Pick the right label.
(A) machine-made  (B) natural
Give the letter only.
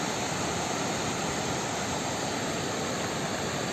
B